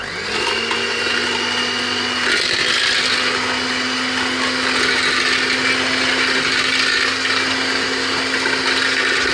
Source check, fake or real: real